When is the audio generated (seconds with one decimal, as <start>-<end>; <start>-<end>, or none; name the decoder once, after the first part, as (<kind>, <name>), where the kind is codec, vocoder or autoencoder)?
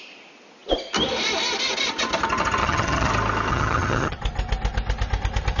2.6-3.1 (vocoder, HiFi-GAN); 3.5-4.2